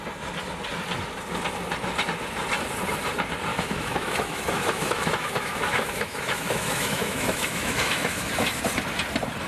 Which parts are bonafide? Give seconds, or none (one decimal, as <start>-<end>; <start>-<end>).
0.0-3.5; 8.6-9.5